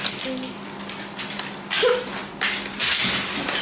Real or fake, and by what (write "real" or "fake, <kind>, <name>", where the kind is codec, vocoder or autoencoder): real